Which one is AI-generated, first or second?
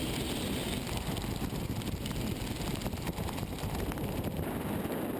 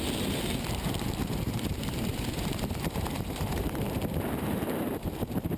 second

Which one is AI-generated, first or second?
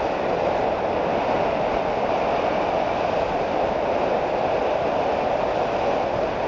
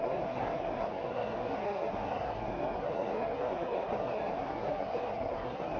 second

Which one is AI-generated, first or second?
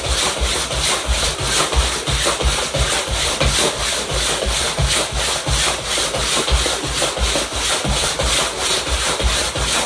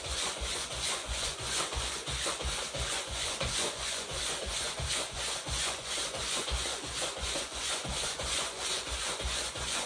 second